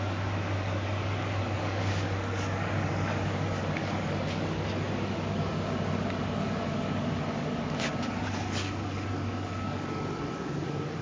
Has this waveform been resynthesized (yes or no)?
yes